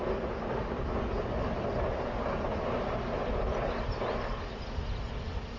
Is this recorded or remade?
recorded